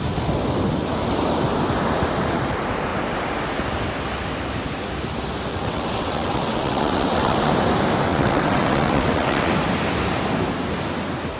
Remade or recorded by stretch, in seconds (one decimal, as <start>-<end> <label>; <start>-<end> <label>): 0.0-5.5 recorded; 5.5-7.5 remade; 7.5-8.1 recorded; 8.1-9.5 remade; 9.5-11.4 recorded